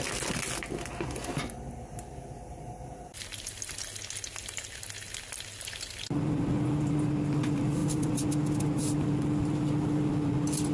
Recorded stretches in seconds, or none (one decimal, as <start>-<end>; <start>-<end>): 0.0-10.7